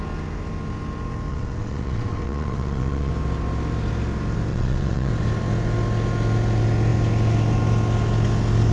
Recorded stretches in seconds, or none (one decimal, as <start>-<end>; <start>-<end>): 0.0-1.3; 3.1-4.5; 5.1-8.7